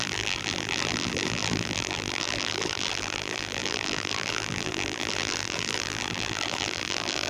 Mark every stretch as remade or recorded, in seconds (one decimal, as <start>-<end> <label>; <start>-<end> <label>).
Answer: 0.0-7.3 remade